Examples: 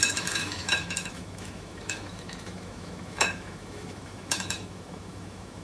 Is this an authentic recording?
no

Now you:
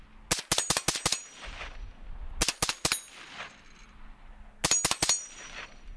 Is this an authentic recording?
yes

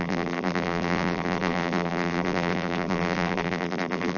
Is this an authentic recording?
no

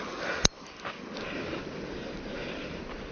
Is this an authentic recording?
yes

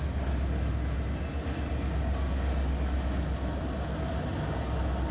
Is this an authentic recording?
yes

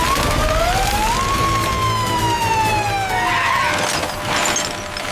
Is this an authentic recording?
yes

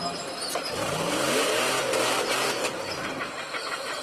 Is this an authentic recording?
no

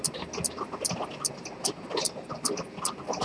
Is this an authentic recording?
yes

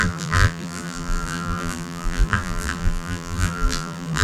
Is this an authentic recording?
no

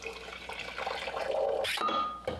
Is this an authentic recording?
yes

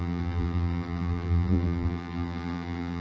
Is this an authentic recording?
no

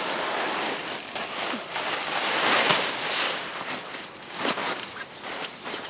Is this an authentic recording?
yes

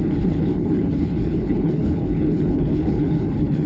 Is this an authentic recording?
no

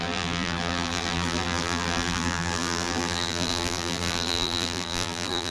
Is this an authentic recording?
no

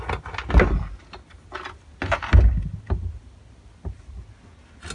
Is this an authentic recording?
yes